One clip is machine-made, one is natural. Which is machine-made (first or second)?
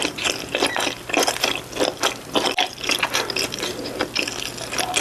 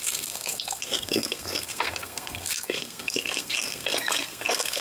second